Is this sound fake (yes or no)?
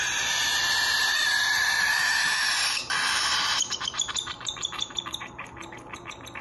yes